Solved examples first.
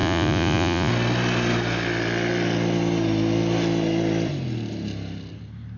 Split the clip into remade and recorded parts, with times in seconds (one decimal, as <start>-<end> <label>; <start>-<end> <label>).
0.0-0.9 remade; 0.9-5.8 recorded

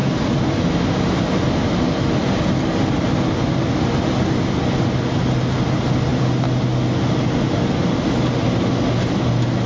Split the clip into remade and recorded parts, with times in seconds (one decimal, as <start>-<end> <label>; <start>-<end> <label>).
0.0-9.7 recorded

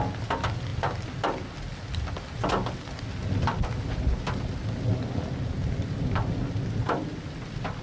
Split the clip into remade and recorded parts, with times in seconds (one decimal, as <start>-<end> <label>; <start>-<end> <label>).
0.0-7.8 recorded

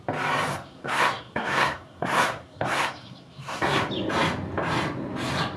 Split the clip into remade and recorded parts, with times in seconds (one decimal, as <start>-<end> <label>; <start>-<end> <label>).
0.0-0.5 recorded; 0.5-3.9 remade; 3.9-5.6 recorded

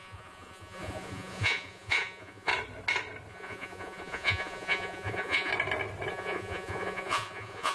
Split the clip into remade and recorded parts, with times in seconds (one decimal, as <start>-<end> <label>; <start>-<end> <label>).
0.0-2.5 remade; 2.5-3.3 recorded; 3.3-5.5 remade; 5.5-6.1 recorded; 6.1-7.7 remade

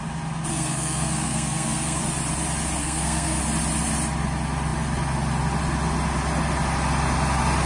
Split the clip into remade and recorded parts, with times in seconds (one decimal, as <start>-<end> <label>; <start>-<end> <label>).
0.0-0.5 recorded; 0.5-2.0 remade; 2.0-2.8 recorded; 2.8-3.4 remade; 3.4-7.7 recorded

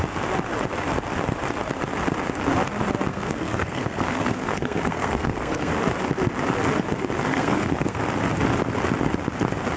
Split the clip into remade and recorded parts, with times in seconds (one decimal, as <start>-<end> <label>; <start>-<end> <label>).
0.0-3.1 recorded; 3.1-5.7 remade; 5.7-7.3 recorded; 7.3-8.0 remade; 8.0-9.8 recorded

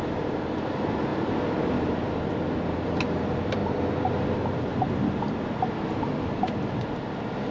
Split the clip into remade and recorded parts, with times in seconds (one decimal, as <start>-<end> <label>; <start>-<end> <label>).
0.0-7.5 recorded